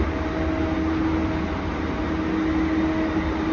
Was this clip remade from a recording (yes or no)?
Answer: no